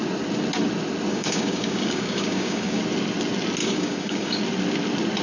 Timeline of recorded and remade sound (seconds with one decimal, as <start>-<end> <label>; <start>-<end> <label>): 0.0-1.1 recorded; 1.1-2.8 remade; 2.8-3.6 recorded; 3.6-4.4 remade; 4.4-5.2 recorded